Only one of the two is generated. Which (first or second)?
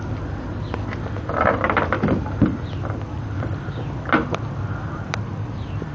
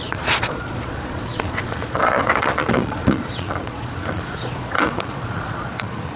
second